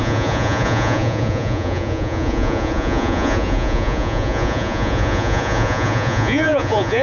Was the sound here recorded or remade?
remade